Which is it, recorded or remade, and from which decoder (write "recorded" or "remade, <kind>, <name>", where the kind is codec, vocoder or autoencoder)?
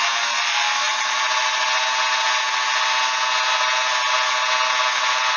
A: recorded